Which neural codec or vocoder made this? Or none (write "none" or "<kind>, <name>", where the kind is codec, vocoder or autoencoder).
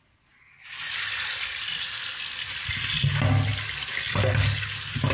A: none